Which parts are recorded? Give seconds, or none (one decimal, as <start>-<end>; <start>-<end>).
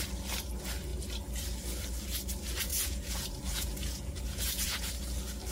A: 0.0-2.7; 4.9-5.5